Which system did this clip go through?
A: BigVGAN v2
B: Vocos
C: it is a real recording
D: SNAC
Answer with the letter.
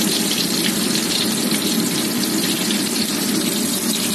C